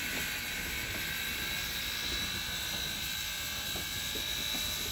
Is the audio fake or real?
real